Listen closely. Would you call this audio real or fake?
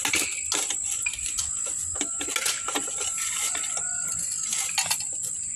real